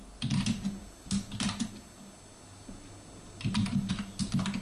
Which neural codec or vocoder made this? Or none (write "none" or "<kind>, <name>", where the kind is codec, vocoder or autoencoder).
none